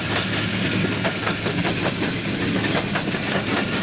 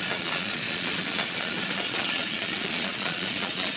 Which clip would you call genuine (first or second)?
first